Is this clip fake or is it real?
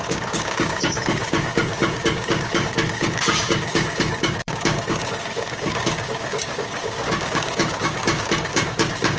fake